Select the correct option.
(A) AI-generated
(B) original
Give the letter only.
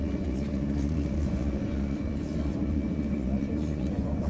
A